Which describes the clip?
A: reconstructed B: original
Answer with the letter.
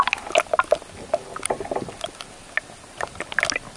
B